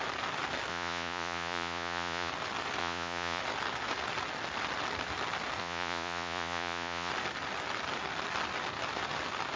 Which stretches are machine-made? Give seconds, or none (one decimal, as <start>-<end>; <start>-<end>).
0.7-2.3; 2.8-3.4; 5.6-7.1